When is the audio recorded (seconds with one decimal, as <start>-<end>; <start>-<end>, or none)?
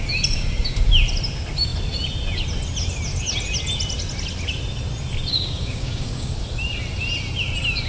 0.0-5.3; 6.3-7.9